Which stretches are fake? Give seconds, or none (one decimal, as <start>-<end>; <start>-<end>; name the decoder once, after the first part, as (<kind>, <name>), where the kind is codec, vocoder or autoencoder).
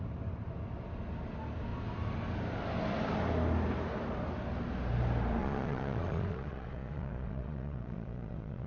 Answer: 5.4-8.7 (vocoder, Vocos)